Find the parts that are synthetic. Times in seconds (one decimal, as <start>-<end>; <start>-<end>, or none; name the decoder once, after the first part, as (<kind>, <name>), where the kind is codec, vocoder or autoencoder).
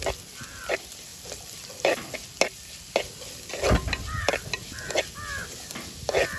none